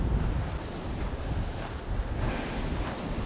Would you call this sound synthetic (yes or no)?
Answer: no